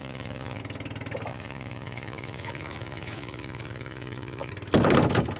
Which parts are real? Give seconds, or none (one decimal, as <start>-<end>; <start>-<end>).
0.6-1.3; 4.5-5.4